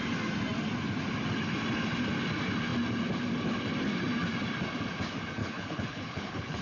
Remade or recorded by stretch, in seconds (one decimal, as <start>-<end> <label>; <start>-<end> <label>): 0.0-5.4 recorded; 5.4-6.6 remade

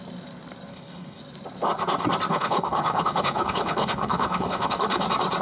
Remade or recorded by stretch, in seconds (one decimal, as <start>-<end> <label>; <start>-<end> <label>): 0.0-0.7 recorded; 0.7-1.2 remade; 1.2-2.3 recorded; 2.3-5.0 remade; 5.0-5.4 recorded

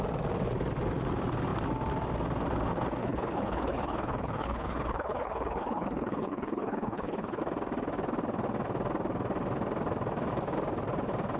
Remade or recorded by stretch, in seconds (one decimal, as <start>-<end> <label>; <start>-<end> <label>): 0.0-3.0 recorded; 3.0-7.4 remade; 7.4-11.4 recorded

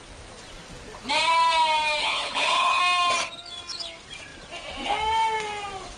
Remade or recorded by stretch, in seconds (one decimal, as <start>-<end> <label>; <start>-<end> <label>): 0.0-2.0 recorded; 2.0-2.8 remade; 2.8-6.0 recorded

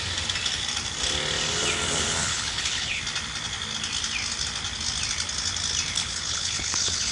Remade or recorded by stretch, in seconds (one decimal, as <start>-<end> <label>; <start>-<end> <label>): 0.0-2.3 recorded; 2.3-3.0 remade; 3.0-6.0 recorded; 6.0-7.1 remade

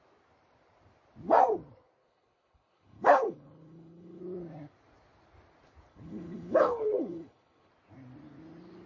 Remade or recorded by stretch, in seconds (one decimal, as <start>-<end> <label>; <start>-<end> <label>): 0.0-2.0 recorded; 2.0-4.2 remade; 4.2-5.9 recorded; 5.9-7.7 remade; 7.7-8.9 recorded

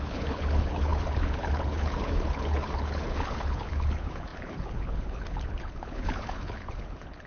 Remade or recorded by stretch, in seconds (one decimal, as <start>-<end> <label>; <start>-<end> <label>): 0.0-7.3 remade